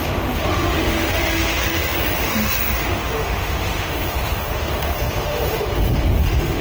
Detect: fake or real fake